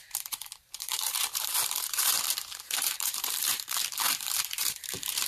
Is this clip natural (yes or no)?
no